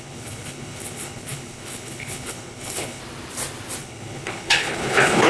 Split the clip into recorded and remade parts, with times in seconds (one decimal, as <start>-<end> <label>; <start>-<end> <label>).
0.0-3.0 remade; 3.0-3.8 recorded; 3.8-5.3 remade